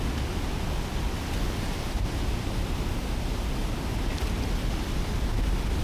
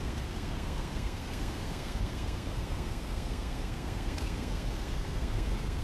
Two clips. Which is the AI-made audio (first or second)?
second